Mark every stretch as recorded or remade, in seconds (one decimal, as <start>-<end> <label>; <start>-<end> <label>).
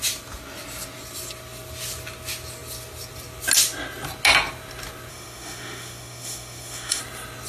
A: 0.0-5.1 recorded; 5.1-7.0 remade; 7.0-7.5 recorded